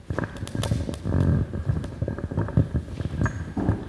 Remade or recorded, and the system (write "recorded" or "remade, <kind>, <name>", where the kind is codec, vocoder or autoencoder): recorded